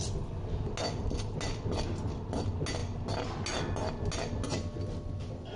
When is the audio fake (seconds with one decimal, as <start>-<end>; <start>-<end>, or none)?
none